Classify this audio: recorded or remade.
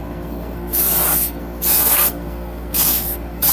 remade